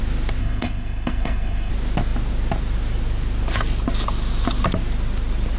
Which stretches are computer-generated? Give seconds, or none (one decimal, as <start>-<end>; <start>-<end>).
0.4-1.7